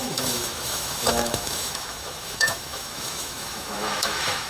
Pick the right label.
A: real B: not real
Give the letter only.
B